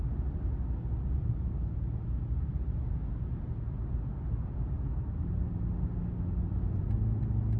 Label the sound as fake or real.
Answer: real